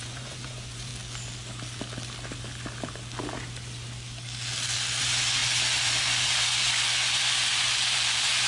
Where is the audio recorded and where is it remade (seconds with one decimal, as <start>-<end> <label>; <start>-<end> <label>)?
0.0-0.9 remade; 0.9-5.0 recorded; 5.0-8.5 remade